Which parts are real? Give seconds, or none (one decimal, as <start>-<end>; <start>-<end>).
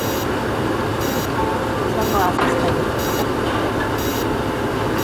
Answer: 0.0-0.9; 3.0-5.0